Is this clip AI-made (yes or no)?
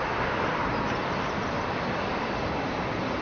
no